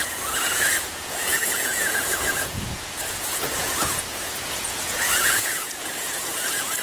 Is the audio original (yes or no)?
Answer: no